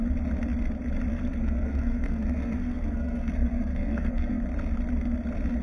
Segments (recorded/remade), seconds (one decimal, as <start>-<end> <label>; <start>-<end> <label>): 0.0-1.1 recorded; 1.1-4.4 remade; 4.4-5.6 recorded